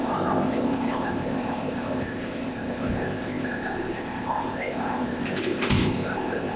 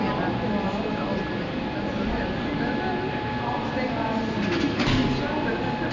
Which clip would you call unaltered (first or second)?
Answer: second